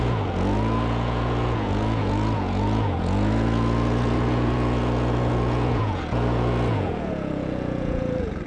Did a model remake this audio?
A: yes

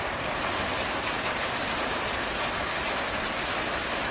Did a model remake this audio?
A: no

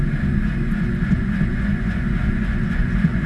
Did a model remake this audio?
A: yes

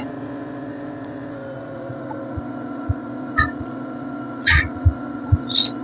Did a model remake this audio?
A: yes